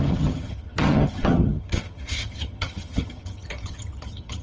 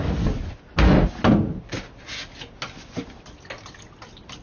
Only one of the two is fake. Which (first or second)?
first